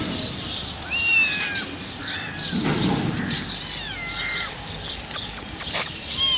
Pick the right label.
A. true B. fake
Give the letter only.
B